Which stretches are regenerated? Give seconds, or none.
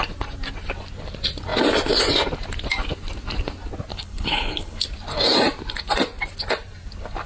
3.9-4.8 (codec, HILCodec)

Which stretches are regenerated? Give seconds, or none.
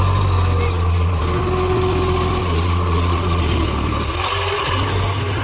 0.7-1.2 (vocoder, Vocos); 2.4-3.4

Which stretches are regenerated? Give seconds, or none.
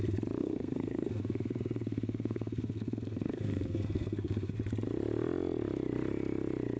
0.4-4.5 (codec, SNAC)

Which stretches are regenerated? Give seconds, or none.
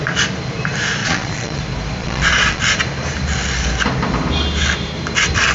1.0-1.6 (vocoder, Vocos); 2.0-2.6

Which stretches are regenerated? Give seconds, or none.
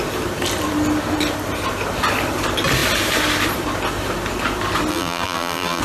4.9-5.8 (vocoder, BigVGAN v2)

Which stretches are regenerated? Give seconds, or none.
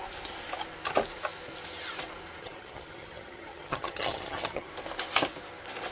2.4-4.7 (vocoder, HiFi-GAN)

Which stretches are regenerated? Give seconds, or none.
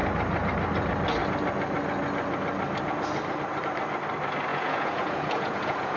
4.5-6.0 (vocoder, Vocos)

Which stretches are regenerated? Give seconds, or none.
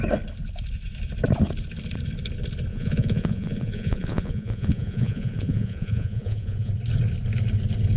2.7-6.7 (vocoder, Vocos)